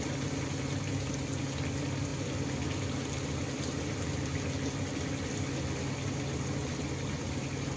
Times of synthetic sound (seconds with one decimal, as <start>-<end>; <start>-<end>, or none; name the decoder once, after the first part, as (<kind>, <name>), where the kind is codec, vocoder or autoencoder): none